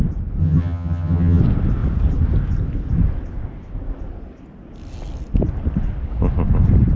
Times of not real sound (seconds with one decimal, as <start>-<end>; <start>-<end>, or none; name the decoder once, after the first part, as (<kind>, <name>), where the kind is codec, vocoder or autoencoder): 0.4-1.4 (vocoder, HiFi-GAN)

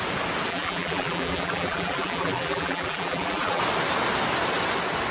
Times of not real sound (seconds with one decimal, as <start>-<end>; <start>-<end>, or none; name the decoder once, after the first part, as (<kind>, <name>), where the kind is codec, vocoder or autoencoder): 0.5-3.6 (vocoder, BigVGAN v2)